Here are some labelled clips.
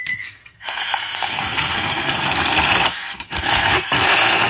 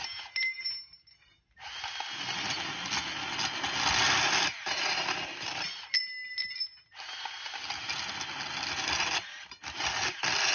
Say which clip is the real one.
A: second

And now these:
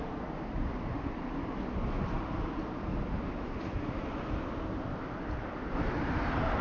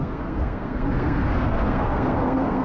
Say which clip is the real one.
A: first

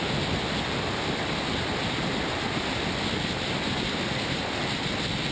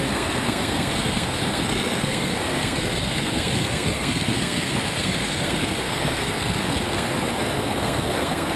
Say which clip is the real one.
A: first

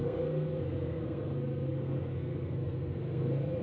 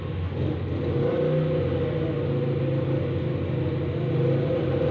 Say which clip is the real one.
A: second